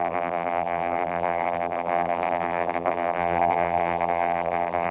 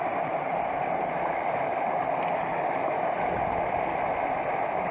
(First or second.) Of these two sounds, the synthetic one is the first